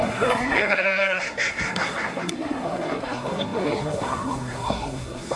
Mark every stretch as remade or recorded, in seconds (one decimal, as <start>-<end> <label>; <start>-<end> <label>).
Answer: 0.0-5.4 remade